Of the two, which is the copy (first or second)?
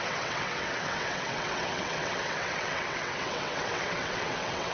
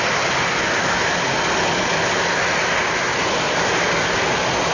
first